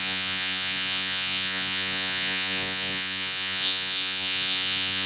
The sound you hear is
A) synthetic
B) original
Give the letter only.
A